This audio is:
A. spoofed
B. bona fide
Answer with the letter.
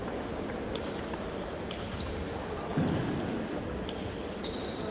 B